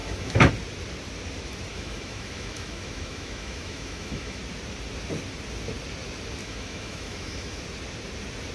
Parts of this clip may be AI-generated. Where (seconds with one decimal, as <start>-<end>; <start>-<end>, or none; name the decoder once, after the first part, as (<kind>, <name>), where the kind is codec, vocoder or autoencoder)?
0.0-0.5 (autoencoder, DAC-VAE); 1.7-4.4; 6.4-7.6

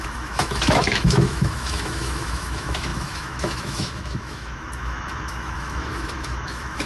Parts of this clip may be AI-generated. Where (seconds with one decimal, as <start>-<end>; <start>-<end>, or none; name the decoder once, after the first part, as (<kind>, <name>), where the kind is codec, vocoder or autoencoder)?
0.0-6.9 (autoencoder, DAC-VAE)

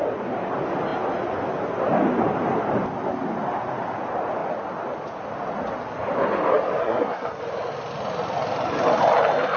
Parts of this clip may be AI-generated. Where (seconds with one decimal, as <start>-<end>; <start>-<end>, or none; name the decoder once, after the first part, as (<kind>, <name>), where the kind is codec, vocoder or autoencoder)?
6.8-7.4 (codec, SNAC)

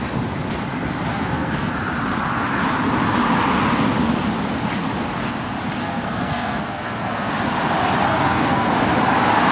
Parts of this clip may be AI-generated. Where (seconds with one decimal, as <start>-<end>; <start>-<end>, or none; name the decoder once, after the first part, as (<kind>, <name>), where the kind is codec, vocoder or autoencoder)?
1.1-1.7 (codec, SNAC); 5.8-7.3; 8.1-8.7